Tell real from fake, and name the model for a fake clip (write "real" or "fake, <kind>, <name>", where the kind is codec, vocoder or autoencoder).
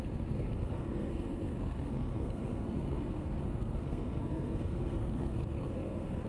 fake, codec, SNAC